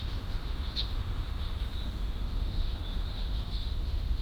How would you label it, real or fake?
fake